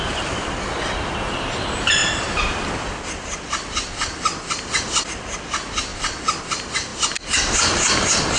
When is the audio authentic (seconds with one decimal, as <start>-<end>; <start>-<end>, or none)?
0.0-2.0; 4.8-5.9; 6.4-8.4

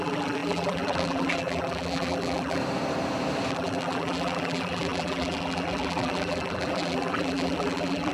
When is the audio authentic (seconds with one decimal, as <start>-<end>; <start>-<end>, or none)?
2.6-3.5

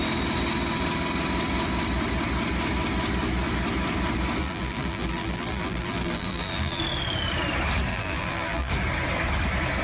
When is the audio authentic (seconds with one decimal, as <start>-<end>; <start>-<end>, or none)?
0.0-4.4; 6.8-7.9; 8.7-9.8